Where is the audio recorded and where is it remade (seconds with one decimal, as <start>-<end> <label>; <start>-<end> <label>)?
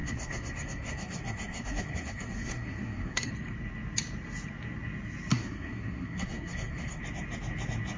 0.0-3.3 remade; 3.3-5.3 recorded; 5.3-7.0 remade; 7.0-8.0 recorded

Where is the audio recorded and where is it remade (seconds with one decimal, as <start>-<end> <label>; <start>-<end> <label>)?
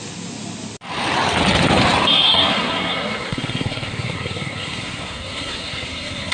0.0-2.1 recorded; 2.1-6.3 remade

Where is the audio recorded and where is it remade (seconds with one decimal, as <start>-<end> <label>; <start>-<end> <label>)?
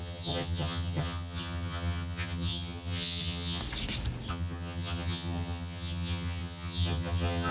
0.0-3.6 remade; 3.6-4.3 recorded; 4.3-7.5 remade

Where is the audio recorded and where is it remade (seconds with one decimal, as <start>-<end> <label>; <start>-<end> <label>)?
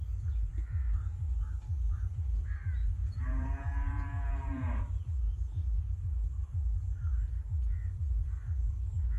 0.0-2.8 recorded; 2.8-4.8 remade; 4.8-9.2 recorded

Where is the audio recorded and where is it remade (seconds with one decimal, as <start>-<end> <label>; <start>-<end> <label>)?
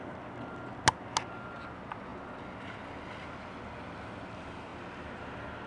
0.0-5.7 recorded